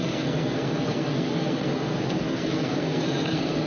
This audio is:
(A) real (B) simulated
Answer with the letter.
B